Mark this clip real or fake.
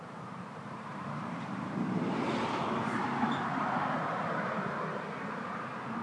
fake